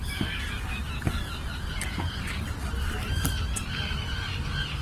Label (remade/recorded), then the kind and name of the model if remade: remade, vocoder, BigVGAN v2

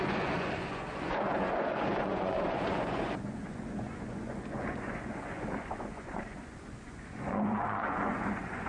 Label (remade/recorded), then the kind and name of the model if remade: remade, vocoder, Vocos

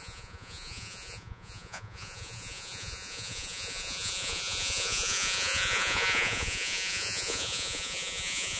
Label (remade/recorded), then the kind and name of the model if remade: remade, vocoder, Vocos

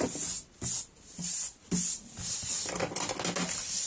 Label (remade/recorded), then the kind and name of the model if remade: recorded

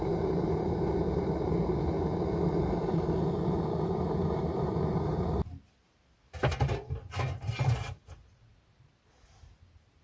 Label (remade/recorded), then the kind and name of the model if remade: recorded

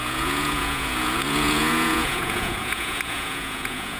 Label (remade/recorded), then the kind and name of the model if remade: remade, vocoder, Vocos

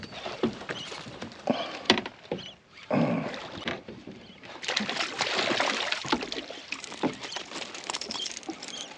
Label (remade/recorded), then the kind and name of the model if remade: remade, vocoder, BigVGAN v2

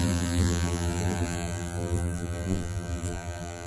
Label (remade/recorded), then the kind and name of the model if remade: remade, vocoder, BigVGAN v2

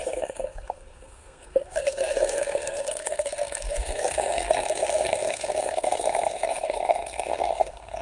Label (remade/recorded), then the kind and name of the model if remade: remade, codec, SNAC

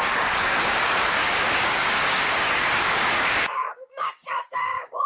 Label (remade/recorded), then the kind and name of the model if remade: remade, codec, DAC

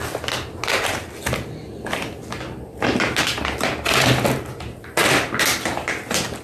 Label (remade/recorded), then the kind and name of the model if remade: recorded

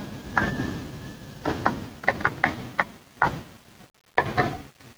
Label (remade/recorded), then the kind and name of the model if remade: recorded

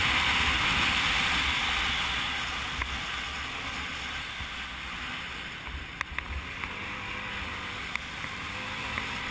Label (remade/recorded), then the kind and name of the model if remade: recorded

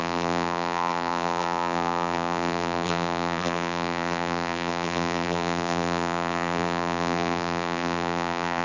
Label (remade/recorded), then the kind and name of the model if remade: remade, vocoder, BigVGAN v2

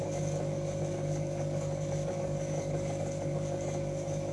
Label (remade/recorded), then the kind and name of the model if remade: remade, codec, DAC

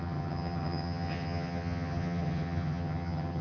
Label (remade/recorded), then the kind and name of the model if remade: remade, vocoder, HiFi-GAN